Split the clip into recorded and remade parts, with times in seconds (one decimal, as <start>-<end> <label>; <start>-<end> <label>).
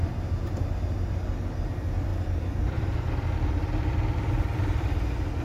0.0-2.1 recorded; 2.1-4.9 remade; 4.9-5.4 recorded